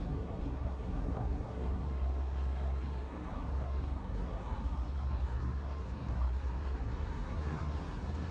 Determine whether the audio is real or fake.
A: fake